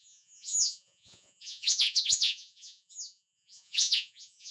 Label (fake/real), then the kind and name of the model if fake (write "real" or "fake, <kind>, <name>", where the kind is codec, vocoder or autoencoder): fake, vocoder, Vocos